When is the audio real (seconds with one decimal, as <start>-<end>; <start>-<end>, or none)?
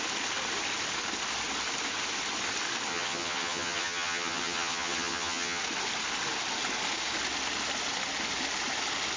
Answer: 0.0-2.9; 5.6-9.2